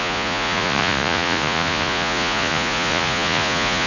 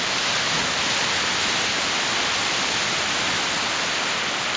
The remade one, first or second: first